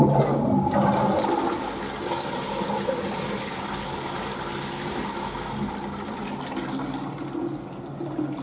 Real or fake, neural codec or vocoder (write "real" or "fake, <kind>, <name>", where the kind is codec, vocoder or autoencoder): real